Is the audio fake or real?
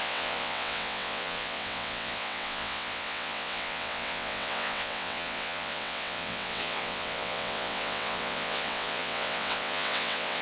fake